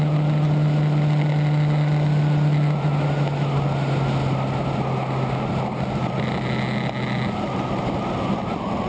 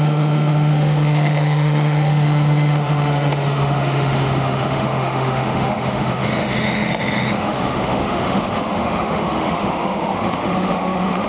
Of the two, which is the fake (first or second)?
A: second